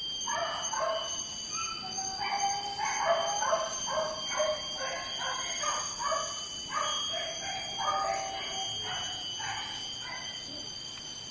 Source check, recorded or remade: recorded